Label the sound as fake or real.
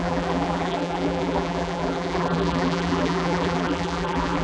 fake